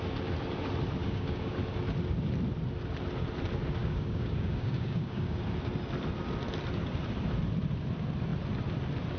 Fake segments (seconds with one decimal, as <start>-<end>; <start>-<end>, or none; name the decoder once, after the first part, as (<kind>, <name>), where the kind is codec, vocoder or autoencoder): 1.0-1.6 (codec, DAC); 3.8-5.4